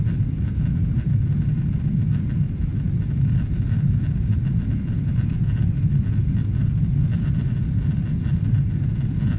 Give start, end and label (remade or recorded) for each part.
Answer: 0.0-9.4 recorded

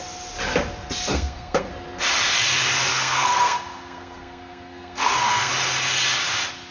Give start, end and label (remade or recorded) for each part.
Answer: 0.0-1.1 recorded; 1.1-1.7 remade; 1.7-2.9 recorded; 2.9-5.5 remade; 5.5-6.7 recorded